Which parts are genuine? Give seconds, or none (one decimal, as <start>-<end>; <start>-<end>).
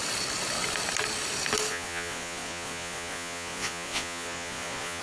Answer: 0.0-1.7